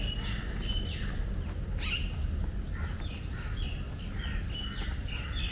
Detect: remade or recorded recorded